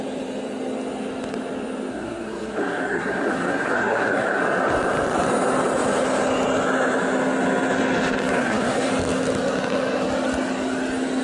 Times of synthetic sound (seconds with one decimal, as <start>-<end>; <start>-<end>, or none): 1.9-4.4; 8.4-8.9